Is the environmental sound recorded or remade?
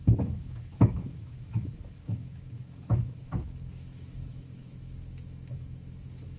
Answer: remade